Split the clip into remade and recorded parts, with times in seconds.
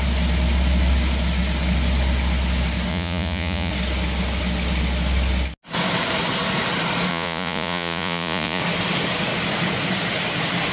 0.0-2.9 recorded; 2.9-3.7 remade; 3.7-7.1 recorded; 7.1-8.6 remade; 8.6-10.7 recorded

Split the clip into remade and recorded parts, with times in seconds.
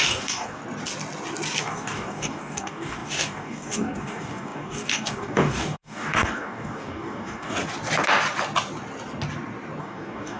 0.0-0.6 remade; 0.6-1.6 recorded; 1.6-7.6 remade; 7.6-9.8 recorded; 9.8-10.4 remade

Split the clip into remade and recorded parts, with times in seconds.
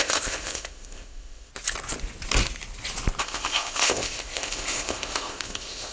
0.0-1.5 remade; 1.5-3.2 recorded; 3.2-5.9 remade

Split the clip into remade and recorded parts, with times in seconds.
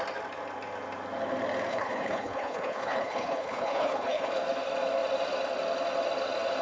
0.0-1.7 recorded; 1.7-4.3 remade; 4.3-6.6 recorded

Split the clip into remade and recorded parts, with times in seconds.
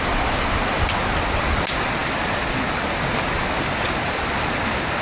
0.0-5.0 recorded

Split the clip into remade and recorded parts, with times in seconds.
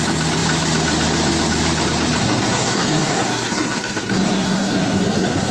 0.0-2.2 recorded; 2.2-5.5 remade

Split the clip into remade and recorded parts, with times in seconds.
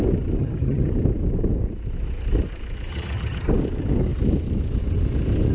0.0-0.4 recorded; 0.4-0.9 remade; 0.9-2.9 recorded; 2.9-3.5 remade; 3.5-5.5 recorded